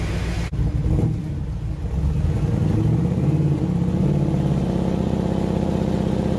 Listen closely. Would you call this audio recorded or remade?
recorded